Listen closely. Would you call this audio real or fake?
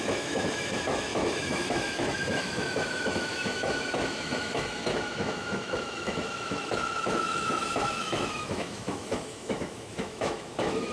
fake